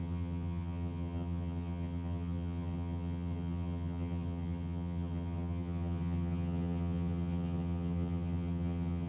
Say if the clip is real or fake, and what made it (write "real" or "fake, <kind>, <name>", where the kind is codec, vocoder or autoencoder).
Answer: fake, vocoder, HiFi-GAN